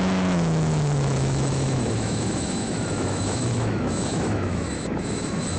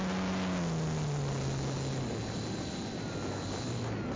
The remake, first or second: first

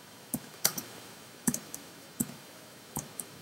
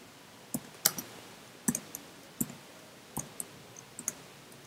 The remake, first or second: first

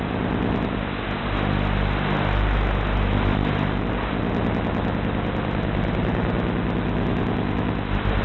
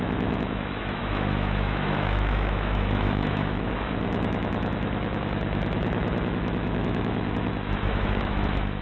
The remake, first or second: second